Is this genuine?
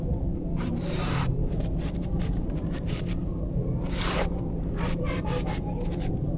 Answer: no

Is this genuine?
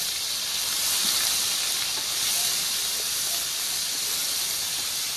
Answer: yes